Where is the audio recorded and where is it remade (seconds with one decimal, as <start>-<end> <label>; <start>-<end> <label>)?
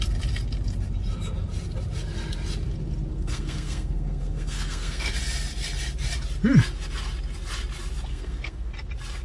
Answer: 0.0-3.1 recorded; 3.1-5.1 remade; 5.1-8.1 recorded; 8.1-8.7 remade; 8.7-9.2 recorded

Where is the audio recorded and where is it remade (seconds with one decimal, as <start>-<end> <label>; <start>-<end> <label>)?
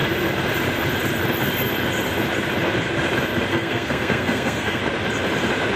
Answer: 0.0-3.5 recorded; 3.5-4.8 remade; 4.8-5.8 recorded